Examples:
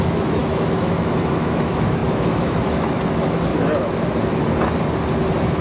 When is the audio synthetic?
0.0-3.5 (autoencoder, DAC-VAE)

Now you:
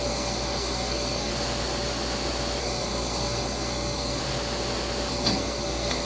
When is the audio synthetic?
0.0-1.3 (codec, SNAC); 2.6-4.2; 5.1-6.0

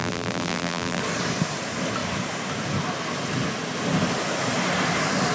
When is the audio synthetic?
0.0-1.0 (vocoder, BigVGAN v2)

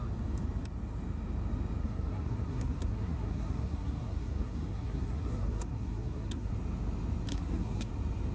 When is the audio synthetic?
1.8-6.5 (codec, SNAC); 7.3-7.9